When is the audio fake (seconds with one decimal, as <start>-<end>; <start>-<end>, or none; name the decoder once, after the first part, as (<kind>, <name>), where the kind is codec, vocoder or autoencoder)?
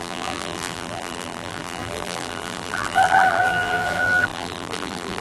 0.0-5.2 (vocoder, BigVGAN v2)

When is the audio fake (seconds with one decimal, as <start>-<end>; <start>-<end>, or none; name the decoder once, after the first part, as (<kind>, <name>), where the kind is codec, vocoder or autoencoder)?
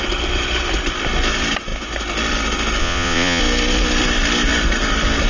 2.8-3.4 (vocoder, Vocos)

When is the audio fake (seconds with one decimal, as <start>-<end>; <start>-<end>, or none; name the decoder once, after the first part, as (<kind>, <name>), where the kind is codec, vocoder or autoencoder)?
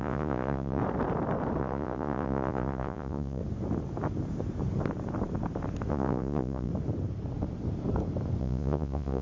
0.0-0.8 (vocoder, Vocos); 1.6-3.4; 5.9-6.7; 8.4-9.2